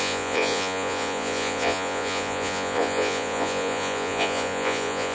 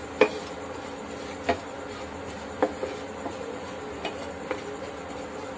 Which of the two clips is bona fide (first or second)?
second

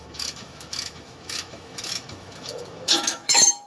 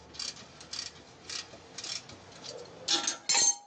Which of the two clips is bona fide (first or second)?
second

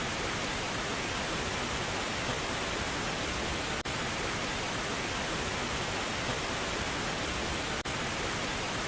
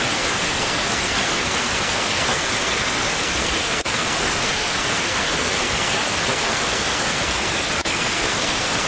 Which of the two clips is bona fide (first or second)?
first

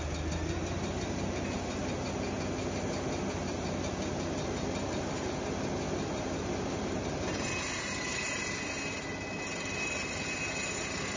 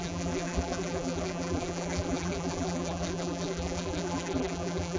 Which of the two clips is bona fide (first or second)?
first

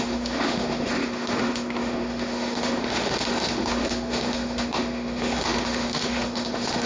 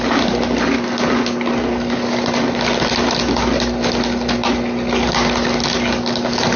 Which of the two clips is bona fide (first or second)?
second